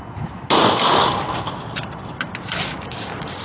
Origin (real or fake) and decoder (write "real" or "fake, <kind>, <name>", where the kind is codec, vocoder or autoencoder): real